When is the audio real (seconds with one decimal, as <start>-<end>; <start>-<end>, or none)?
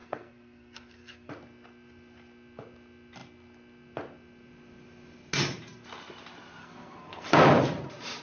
1.3-6.6; 7.3-8.2